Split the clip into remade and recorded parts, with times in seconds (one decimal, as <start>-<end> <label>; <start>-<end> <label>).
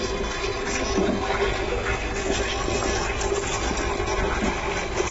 0.0-5.1 recorded